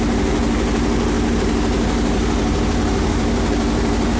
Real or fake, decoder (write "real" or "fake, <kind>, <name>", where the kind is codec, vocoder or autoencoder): real